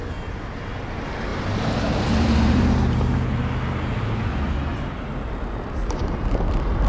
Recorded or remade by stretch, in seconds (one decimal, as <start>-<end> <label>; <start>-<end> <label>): 0.0-1.3 recorded; 1.3-3.4 remade; 3.4-6.9 recorded